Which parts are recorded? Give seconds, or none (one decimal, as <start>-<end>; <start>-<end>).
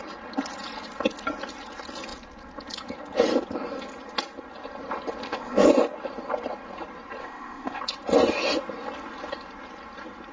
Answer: 0.0-5.2; 5.7-7.2; 7.8-10.3